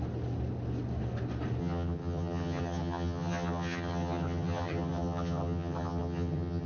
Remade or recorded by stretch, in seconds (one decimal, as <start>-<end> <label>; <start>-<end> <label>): 0.0-1.6 recorded; 1.6-6.7 remade

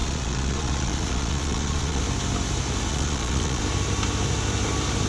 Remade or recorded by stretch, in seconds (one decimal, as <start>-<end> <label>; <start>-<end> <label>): 0.0-2.0 remade; 2.0-2.9 recorded; 2.9-3.6 remade; 3.6-5.1 recorded